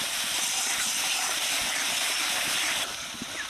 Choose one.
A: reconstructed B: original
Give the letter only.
A